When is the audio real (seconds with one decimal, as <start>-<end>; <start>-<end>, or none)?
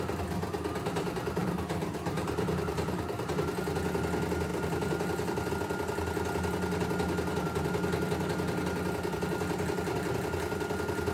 0.0-1.4; 3.3-4.5; 5.5-11.1